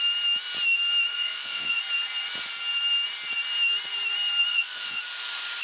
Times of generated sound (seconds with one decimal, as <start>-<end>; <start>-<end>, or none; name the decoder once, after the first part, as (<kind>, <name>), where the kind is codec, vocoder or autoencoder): 1.1-1.8 (vocoder, Vocos); 4.5-5.0